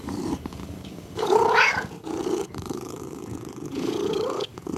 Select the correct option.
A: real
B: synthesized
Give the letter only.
B